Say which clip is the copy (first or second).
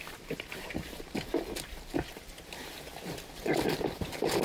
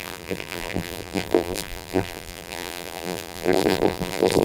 second